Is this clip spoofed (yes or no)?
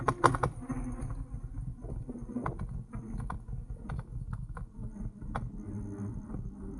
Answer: no